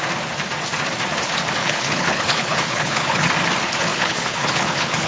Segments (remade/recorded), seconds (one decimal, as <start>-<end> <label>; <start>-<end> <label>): 0.0-1.6 recorded; 1.6-3.3 remade; 3.3-3.9 recorded; 3.9-5.1 remade

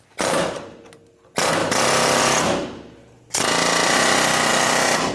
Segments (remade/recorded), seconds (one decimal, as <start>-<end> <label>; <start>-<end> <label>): 0.0-4.5 recorded; 4.5-5.1 remade

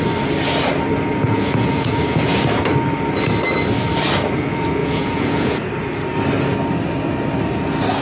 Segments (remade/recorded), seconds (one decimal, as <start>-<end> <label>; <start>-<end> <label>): 0.0-1.2 recorded; 1.2-2.4 remade; 2.4-4.8 recorded; 4.8-5.7 remade; 5.7-8.0 recorded

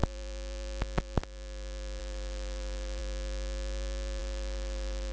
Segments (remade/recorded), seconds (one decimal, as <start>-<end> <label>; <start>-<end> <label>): 0.0-2.0 recorded; 2.0-3.0 remade; 3.0-4.2 recorded; 4.2-5.1 remade

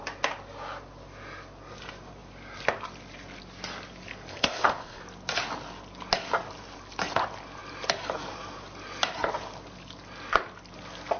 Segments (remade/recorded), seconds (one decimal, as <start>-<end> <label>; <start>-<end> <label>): 0.0-4.3 recorded; 4.3-5.0 remade; 5.0-11.2 recorded

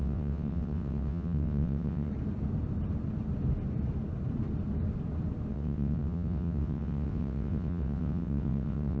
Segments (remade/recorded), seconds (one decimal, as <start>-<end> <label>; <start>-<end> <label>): 0.0-2.1 remade; 2.1-5.5 recorded; 5.5-9.0 remade

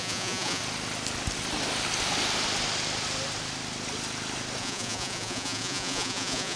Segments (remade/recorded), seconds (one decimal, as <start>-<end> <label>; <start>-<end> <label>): 0.0-0.6 remade; 0.6-4.6 recorded; 4.6-6.6 remade

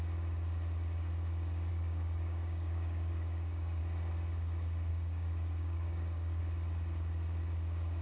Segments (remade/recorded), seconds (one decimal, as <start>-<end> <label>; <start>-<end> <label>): 0.0-1.7 recorded; 1.7-3.8 remade; 3.8-4.9 recorded; 4.9-6.4 remade; 6.4-8.0 recorded